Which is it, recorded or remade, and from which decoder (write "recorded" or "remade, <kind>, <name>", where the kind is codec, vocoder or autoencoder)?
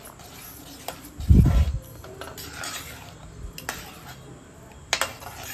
recorded